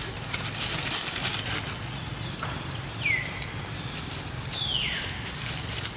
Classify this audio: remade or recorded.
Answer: recorded